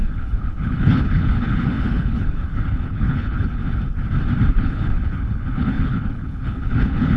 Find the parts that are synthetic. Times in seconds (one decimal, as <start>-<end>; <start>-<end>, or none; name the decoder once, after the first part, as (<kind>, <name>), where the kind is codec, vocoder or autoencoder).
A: 0.0-3.6 (codec, HILCodec); 4.5-7.2